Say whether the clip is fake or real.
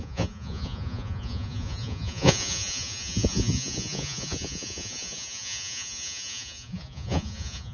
fake